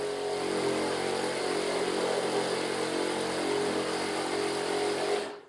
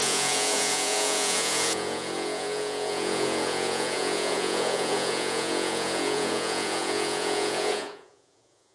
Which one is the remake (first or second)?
second